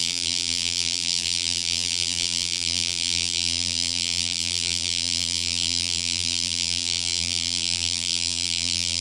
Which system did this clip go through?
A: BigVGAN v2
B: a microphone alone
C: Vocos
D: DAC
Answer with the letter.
A